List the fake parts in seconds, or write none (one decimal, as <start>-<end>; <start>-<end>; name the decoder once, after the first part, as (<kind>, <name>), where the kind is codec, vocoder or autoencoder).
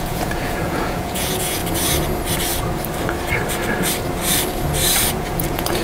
0.0-1.6 (vocoder, Vocos); 5.1-5.8